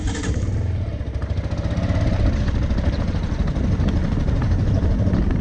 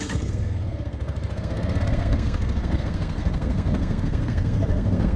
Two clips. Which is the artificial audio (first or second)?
second